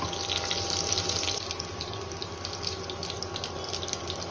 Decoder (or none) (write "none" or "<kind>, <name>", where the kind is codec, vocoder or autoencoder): none